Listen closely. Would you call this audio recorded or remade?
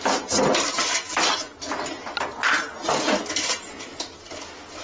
recorded